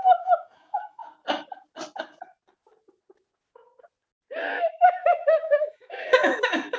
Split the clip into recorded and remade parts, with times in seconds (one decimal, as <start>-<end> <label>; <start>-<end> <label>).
0.0-1.0 remade; 1.0-4.7 recorded; 4.7-6.8 remade